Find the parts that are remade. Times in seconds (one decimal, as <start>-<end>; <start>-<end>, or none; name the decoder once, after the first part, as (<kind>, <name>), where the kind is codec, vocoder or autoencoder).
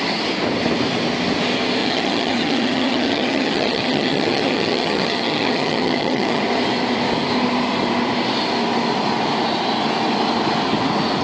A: 1.8-6.4 (vocoder, HiFi-GAN)